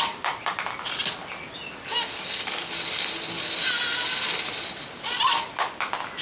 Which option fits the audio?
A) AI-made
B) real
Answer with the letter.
B